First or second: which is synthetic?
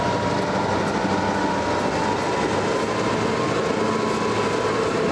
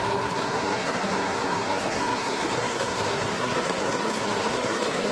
second